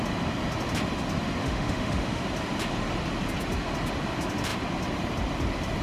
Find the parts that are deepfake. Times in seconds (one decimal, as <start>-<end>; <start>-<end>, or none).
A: 1.4-2.2